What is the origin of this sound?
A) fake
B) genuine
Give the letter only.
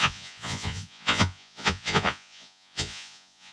A